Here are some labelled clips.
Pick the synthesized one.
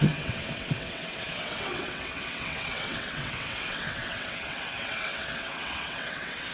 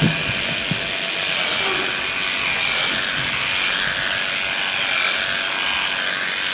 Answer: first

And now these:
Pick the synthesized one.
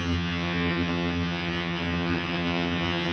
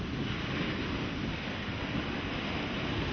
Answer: first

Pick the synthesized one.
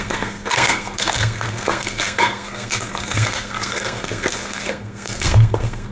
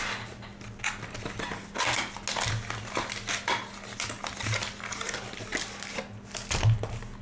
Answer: first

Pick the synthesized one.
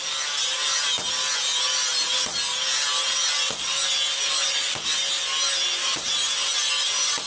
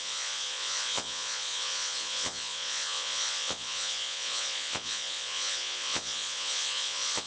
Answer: second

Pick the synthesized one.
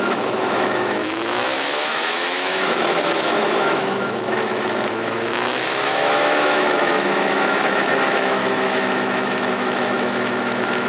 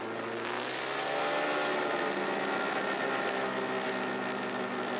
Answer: first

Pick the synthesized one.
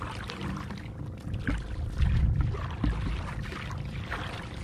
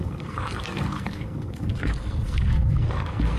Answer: second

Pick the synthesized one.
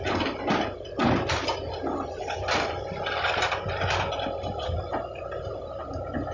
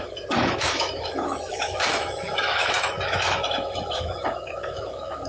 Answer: second